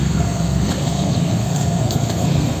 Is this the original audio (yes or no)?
no